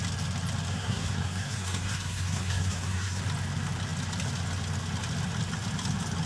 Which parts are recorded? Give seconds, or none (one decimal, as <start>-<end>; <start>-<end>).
0.0-0.7; 3.2-6.3